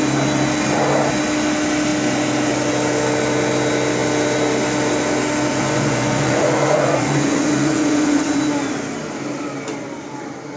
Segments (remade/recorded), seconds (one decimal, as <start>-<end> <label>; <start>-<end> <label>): 0.0-5.5 recorded; 5.5-8.4 remade; 8.4-10.6 recorded